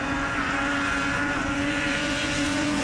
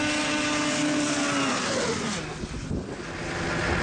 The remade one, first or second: first